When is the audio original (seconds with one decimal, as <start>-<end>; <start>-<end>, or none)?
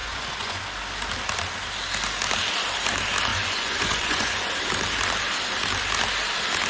0.6-3.3; 4.5-6.7